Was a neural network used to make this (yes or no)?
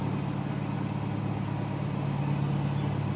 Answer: no